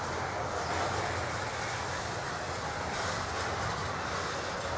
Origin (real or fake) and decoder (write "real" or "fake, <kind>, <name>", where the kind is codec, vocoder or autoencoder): real